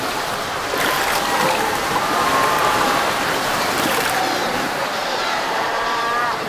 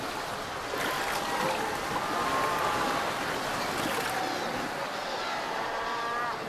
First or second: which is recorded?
second